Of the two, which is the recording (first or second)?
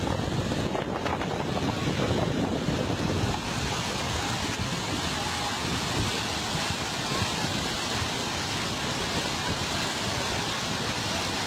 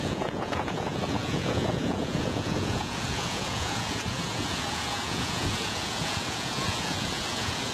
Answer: first